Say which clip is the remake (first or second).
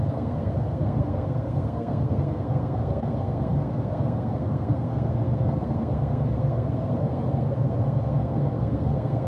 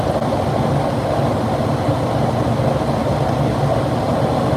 first